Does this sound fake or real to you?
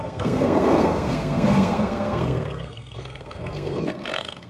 fake